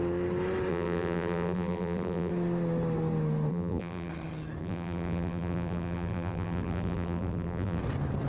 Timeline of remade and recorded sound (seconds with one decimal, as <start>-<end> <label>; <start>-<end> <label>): 0.0-0.7 recorded; 0.7-2.3 remade; 2.3-3.5 recorded; 3.5-4.1 remade; 4.1-4.6 recorded; 4.6-7.8 remade; 7.8-8.3 recorded